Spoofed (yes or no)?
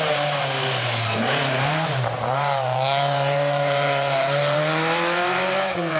yes